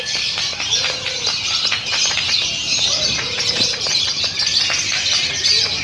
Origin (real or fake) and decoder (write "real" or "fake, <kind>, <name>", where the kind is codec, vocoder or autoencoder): real